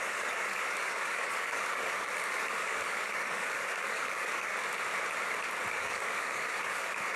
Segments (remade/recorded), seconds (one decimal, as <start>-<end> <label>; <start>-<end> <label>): 0.0-4.5 remade; 4.5-5.7 recorded; 5.7-7.2 remade